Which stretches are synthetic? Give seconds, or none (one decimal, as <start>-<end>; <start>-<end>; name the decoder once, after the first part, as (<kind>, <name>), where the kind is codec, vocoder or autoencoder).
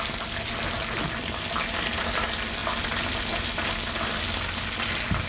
none